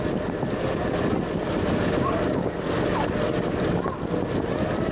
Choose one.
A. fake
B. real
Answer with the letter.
B